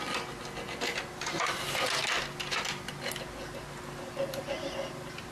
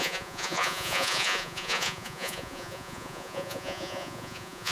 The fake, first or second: second